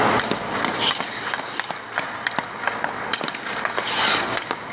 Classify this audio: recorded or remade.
recorded